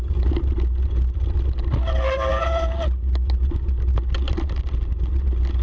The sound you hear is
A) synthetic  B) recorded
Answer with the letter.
B